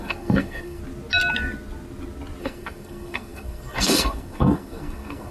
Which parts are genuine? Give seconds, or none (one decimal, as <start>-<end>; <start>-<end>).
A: 0.8-2.4